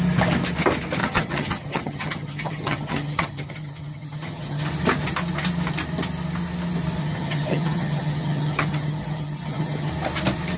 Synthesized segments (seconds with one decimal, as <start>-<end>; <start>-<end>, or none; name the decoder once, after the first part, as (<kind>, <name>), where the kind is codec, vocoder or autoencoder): 1.0-4.7 (vocoder, HiFi-GAN); 7.0-9.9